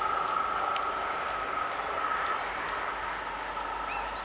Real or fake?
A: real